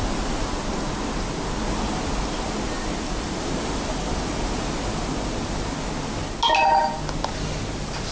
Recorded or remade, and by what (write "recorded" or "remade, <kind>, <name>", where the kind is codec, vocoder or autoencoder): recorded